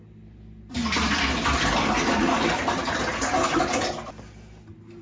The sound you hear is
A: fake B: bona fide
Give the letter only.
B